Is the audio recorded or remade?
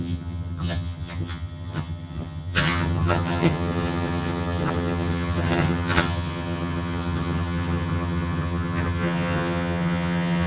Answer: remade